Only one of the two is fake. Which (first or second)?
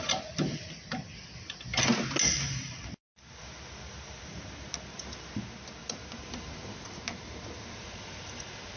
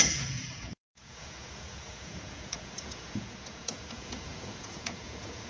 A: second